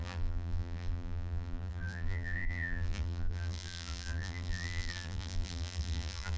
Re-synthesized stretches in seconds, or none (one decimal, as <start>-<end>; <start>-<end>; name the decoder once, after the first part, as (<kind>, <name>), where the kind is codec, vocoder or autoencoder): 0.0-6.4 (vocoder, BigVGAN v2)